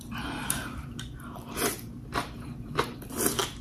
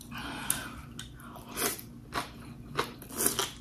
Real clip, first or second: second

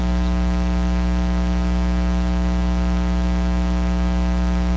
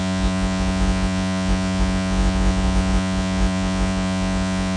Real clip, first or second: first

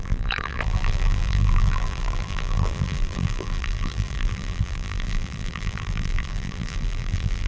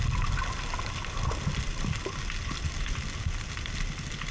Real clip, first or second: second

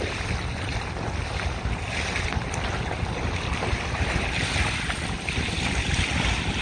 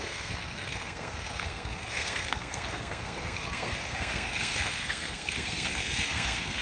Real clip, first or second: first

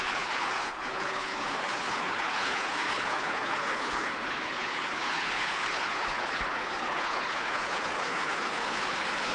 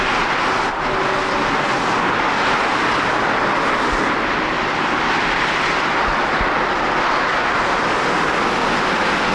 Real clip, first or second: second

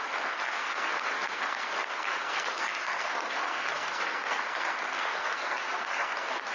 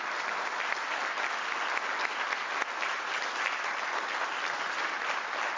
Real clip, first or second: second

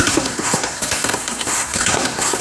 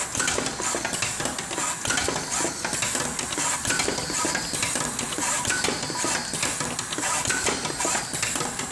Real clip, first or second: second